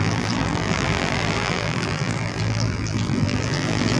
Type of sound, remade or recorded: remade